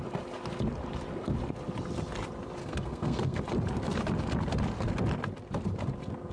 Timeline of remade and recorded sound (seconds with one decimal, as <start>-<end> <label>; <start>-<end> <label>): 0.0-2.6 recorded; 2.6-3.4 remade; 3.4-6.3 recorded